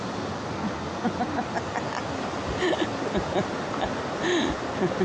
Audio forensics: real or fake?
real